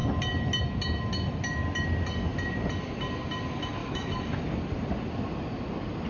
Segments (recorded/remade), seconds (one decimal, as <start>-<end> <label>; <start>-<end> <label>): 0.0-3.8 recorded; 3.8-4.4 remade; 4.4-6.1 recorded